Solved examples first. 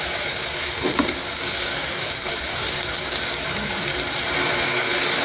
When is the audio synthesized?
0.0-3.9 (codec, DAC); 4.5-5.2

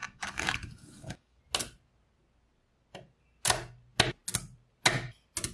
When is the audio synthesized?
0.0-1.4 (codec, DAC)

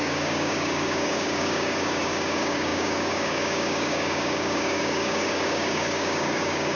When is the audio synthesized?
0.0-6.8 (codec, DAC)

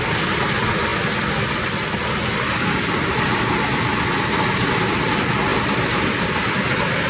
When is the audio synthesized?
none

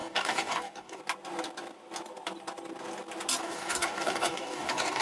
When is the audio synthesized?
0.0-1.0 (codec, DAC); 3.4-5.0

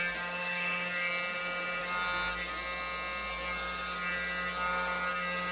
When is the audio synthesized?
0.4-1.1 (codec, DAC)

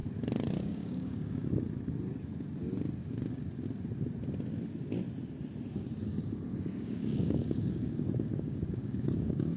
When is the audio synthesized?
0.6-1.4 (codec, DAC); 6.0-9.6